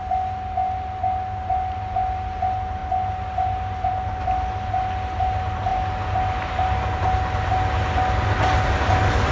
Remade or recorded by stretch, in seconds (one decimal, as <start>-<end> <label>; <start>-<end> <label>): 0.0-9.3 recorded